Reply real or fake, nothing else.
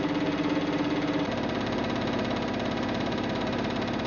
real